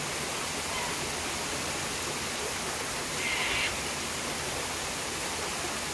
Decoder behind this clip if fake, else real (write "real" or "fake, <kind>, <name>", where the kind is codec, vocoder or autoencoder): real